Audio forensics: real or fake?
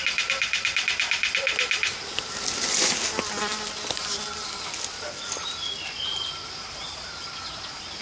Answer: real